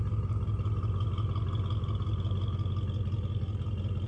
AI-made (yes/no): no